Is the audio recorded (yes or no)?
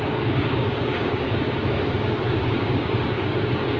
no